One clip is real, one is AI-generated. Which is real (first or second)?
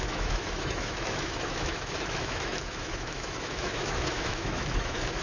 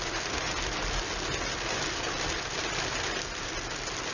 second